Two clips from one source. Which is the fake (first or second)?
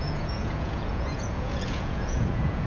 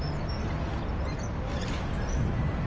first